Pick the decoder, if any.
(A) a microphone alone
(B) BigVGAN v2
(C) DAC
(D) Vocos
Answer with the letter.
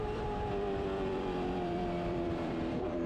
B